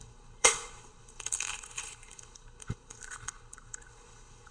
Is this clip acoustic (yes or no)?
no